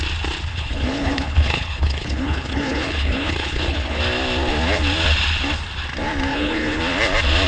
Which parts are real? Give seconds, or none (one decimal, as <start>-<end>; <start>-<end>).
0.0-0.5; 4.0-6.3; 6.8-7.5